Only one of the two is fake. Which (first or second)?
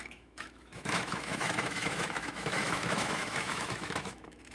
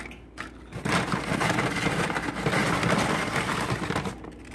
first